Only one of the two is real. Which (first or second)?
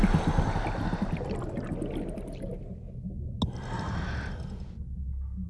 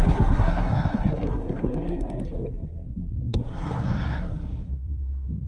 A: first